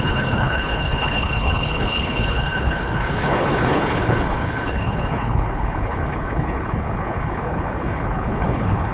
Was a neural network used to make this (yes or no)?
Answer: yes